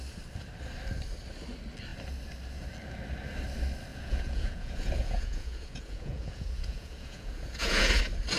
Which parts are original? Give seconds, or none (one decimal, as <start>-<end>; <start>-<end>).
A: 0.0-3.9; 8.0-8.4